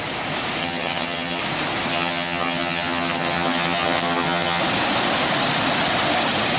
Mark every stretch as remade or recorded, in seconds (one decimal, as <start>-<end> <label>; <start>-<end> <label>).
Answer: 0.0-0.6 recorded; 0.6-1.4 remade; 1.4-1.9 recorded; 1.9-4.6 remade; 4.6-6.6 recorded